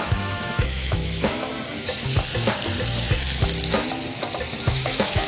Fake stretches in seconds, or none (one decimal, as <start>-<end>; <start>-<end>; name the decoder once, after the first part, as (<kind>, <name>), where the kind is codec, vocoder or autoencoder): 0.0-1.5 (autoencoder, DAC-VAE); 4.7-5.3